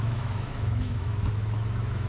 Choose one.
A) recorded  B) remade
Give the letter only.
B